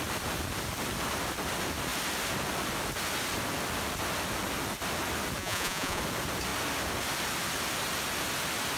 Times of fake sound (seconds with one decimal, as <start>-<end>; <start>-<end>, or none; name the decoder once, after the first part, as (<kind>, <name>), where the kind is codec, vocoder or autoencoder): 5.4-6.0 (vocoder, Vocos)